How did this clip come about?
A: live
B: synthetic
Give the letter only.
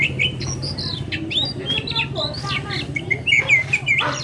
A